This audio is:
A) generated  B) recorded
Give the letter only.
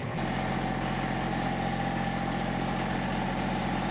B